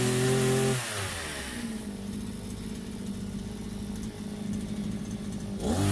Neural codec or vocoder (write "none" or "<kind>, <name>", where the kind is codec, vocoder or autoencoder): none